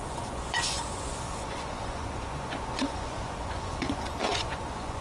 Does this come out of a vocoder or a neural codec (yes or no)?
yes